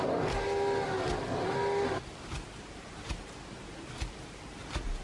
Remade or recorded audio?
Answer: recorded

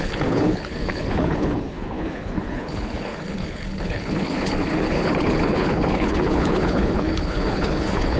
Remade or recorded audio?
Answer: remade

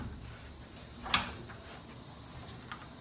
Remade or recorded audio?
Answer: recorded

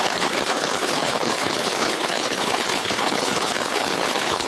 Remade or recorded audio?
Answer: remade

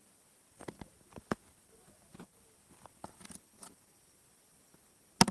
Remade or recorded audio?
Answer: recorded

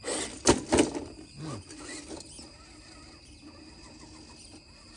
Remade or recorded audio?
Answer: recorded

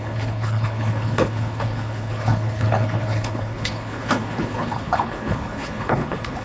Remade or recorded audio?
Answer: remade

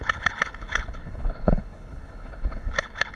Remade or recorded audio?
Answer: remade